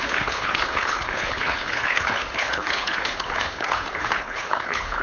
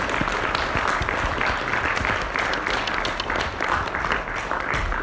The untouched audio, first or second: second